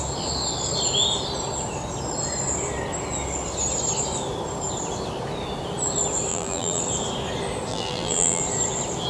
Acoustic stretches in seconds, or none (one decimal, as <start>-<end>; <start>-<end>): 0.0-6.3; 6.8-7.7; 8.4-9.1